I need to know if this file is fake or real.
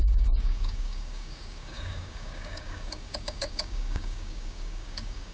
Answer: fake